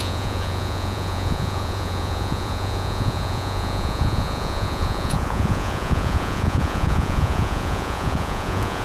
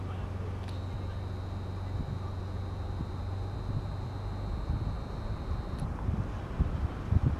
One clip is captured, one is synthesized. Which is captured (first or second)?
second